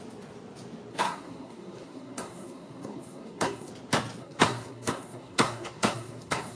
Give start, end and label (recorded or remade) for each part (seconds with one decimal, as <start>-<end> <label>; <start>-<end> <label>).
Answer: 0.0-0.9 recorded; 0.9-3.7 remade; 3.7-4.2 recorded; 4.2-6.6 remade